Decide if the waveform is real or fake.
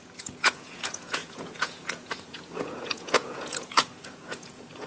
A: fake